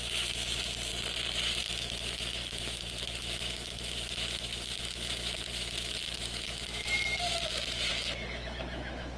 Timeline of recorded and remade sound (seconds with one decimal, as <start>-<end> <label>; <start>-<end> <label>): 0.0-0.9 remade; 0.9-1.6 recorded; 1.6-9.2 remade